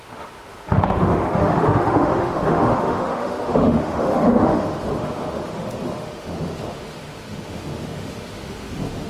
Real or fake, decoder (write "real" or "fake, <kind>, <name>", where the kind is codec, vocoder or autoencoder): fake, autoencoder, DAC-VAE